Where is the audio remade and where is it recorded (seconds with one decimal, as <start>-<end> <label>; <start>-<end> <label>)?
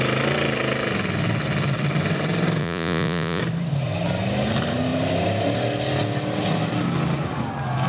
0.0-2.6 recorded; 2.6-3.4 remade; 3.4-7.9 recorded